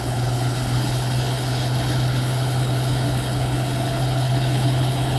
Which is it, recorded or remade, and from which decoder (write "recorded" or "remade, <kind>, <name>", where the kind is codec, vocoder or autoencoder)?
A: remade, codec, HILCodec